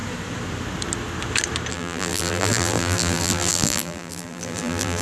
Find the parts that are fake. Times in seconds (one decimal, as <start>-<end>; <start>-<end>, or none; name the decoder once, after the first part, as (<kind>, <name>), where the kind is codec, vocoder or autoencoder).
1.7-5.0 (vocoder, BigVGAN v2)